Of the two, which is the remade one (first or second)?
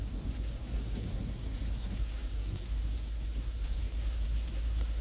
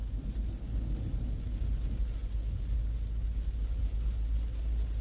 first